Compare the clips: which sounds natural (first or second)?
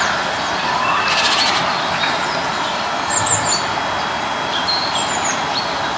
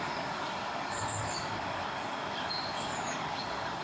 first